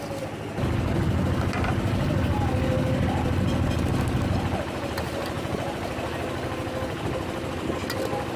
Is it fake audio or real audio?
real